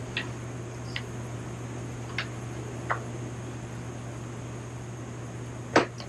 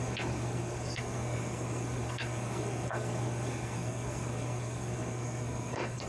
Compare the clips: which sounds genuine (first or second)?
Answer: first